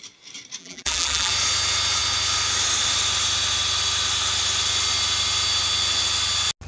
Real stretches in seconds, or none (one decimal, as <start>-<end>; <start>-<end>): 0.0-0.6; 1.3-6.7